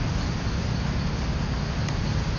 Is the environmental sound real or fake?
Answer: real